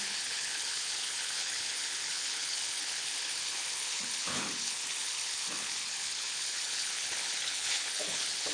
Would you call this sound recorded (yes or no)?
no